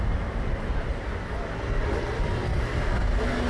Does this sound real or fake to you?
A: real